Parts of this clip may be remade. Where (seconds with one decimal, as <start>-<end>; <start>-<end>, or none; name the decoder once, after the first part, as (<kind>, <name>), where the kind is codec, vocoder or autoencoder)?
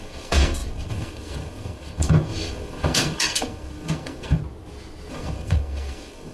0.0-4.4 (codec, SNAC); 5.1-6.3